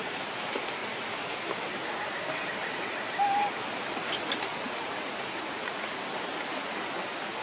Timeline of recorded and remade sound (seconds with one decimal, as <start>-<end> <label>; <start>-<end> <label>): 0.0-0.8 recorded; 0.8-1.4 remade; 1.4-4.5 recorded; 4.5-5.9 remade; 5.9-7.4 recorded